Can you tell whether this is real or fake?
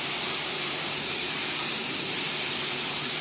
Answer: fake